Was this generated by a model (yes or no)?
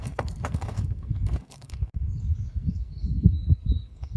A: yes